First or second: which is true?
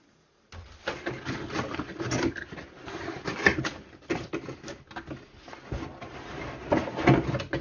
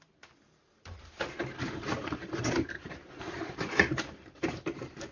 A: first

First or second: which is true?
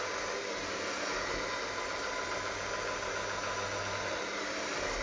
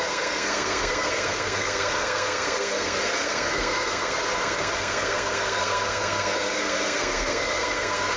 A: first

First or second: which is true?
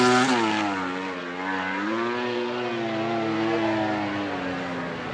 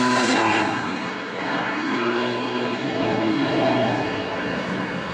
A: first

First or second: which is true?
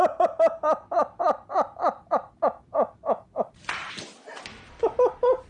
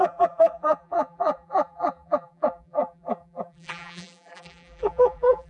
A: first